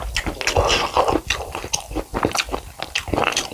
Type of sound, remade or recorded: recorded